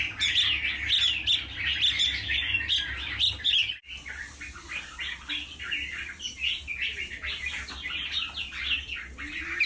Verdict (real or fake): real